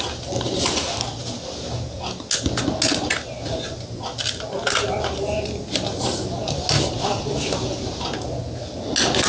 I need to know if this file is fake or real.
real